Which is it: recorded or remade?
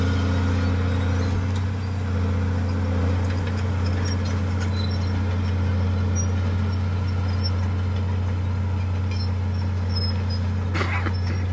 recorded